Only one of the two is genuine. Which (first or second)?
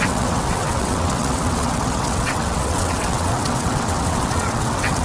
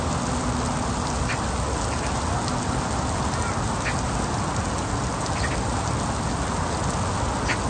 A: second